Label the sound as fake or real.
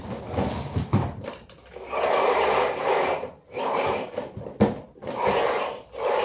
real